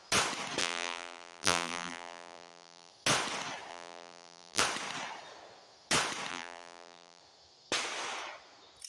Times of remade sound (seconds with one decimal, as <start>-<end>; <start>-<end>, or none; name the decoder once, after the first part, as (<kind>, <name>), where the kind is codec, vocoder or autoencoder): 0.6-2.9 (vocoder, BigVGAN v2); 3.7-4.6; 6.3-7.2

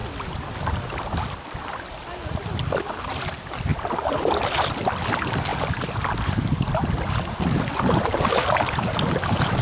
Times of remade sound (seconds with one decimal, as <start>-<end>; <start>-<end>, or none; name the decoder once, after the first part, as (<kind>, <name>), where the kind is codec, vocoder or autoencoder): none

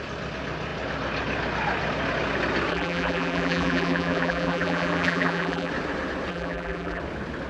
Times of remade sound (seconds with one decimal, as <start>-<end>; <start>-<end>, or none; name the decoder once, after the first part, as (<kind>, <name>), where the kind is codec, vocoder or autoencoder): 2.7-5.7 (vocoder, BigVGAN v2); 6.3-7.0

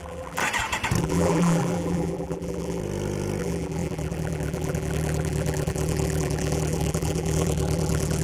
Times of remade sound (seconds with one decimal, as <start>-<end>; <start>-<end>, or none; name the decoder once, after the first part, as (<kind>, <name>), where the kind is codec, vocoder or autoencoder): 0.0-0.4 (vocoder, BigVGAN v2); 1.0-2.8; 3.4-8.2

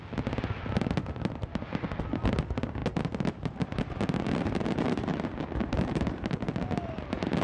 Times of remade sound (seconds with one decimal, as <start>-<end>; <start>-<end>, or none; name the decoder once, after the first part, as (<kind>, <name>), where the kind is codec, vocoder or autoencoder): 2.8-7.4 (vocoder, BigVGAN v2)